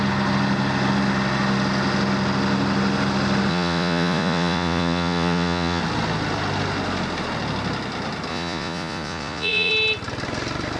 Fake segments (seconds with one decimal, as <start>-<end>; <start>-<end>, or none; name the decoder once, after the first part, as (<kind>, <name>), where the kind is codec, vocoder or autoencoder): 3.5-5.8 (vocoder, Vocos); 8.3-9.7